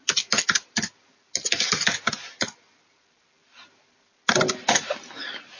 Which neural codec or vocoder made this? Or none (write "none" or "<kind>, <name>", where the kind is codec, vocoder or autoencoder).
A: none